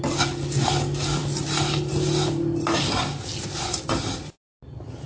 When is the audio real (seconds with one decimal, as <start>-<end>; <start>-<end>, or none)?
0.0-5.1